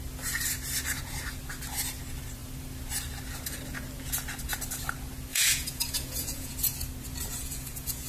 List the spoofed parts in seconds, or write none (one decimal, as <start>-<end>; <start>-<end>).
5.3-6.5; 7.3-8.1